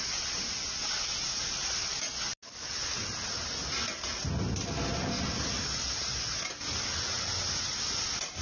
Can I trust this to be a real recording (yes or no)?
yes